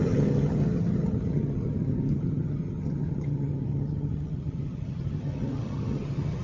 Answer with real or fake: fake